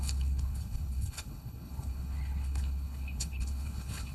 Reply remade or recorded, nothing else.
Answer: remade